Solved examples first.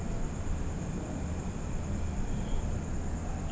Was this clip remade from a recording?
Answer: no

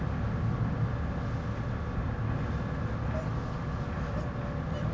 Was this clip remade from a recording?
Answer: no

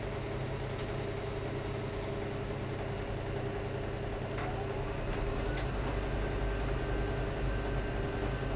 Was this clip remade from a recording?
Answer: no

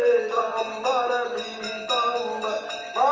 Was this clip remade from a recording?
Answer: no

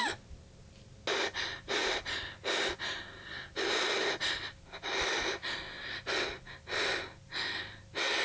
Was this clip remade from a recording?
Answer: no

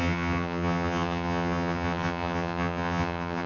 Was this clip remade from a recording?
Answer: yes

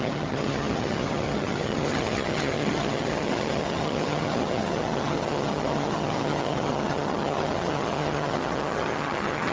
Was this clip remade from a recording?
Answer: yes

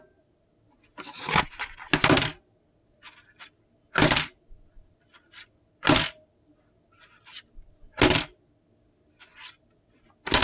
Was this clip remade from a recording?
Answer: no